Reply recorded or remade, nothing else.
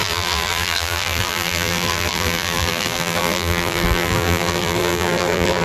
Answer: remade